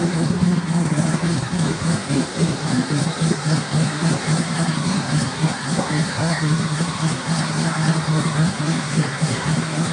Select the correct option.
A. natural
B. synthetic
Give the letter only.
B